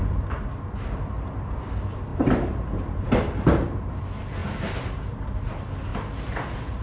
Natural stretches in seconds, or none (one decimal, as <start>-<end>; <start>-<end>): 0.0-2.1; 4.0-5.9